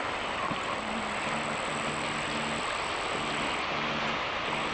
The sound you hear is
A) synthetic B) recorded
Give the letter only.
B